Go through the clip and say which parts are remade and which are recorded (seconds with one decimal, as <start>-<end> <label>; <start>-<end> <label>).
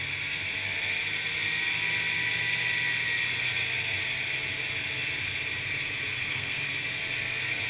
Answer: 0.0-6.1 recorded; 6.1-6.6 remade; 6.6-7.7 recorded